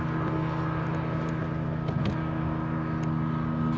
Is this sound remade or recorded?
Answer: recorded